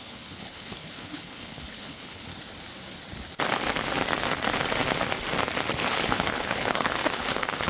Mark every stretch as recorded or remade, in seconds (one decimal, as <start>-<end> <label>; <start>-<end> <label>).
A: 0.0-2.3 remade; 2.3-5.9 recorded; 5.9-7.7 remade